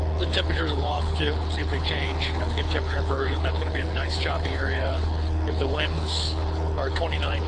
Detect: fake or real fake